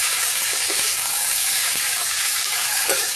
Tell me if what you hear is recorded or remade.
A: remade